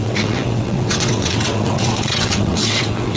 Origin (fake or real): fake